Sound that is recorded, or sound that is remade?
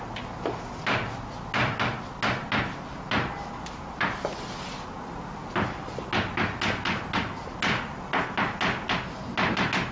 recorded